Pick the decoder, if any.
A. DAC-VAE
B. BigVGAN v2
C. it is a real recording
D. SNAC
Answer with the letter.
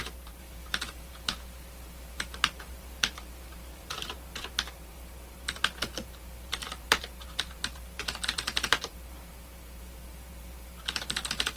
B